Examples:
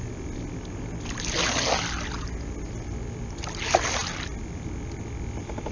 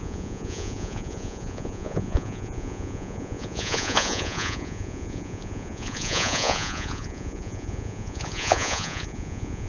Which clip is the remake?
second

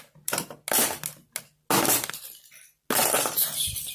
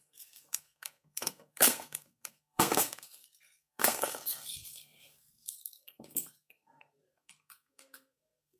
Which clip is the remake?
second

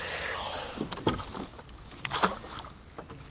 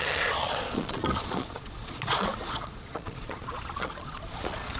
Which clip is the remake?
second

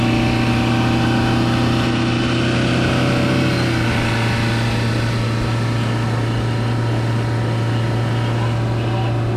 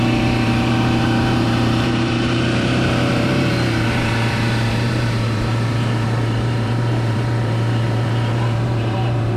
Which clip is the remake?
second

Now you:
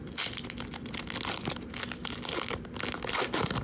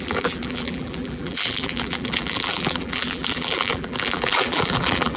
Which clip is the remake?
second